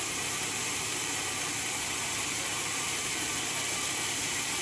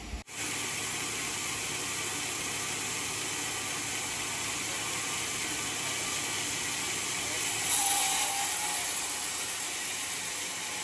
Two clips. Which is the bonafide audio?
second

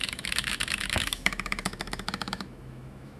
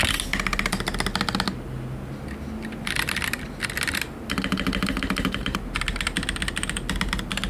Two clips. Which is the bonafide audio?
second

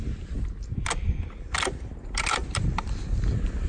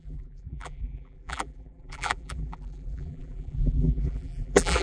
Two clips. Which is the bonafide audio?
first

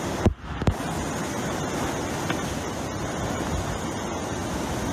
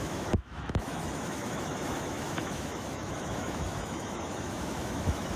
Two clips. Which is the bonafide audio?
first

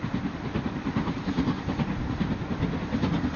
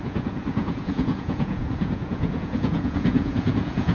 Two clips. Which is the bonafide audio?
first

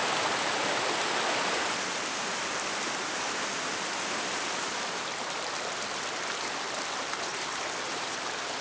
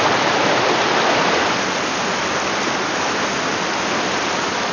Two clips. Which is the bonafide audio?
second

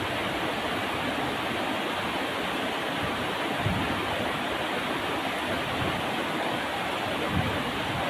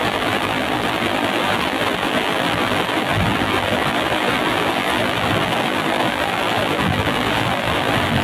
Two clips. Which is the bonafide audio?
first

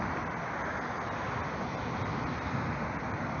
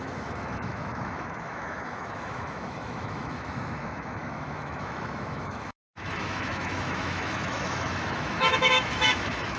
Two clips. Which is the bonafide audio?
first